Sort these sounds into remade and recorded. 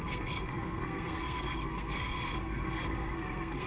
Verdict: remade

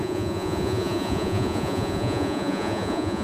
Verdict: remade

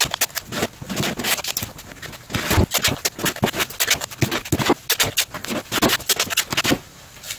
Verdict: recorded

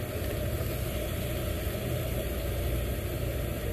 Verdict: recorded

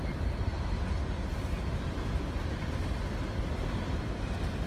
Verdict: recorded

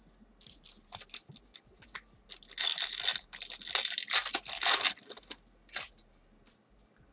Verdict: recorded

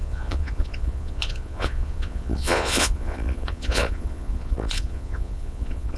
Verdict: remade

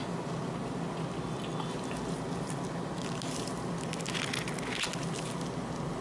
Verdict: recorded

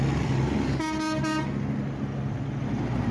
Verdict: recorded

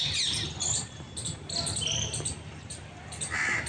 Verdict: recorded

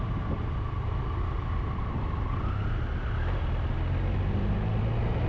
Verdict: recorded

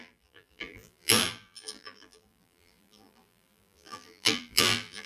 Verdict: remade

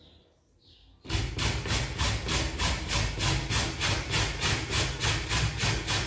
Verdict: recorded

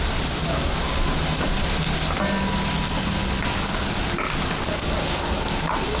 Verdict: recorded